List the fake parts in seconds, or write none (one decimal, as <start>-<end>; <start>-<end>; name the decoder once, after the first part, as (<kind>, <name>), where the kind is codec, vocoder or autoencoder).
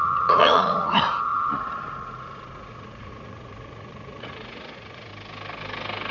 0.0-5.1 (vocoder, Vocos)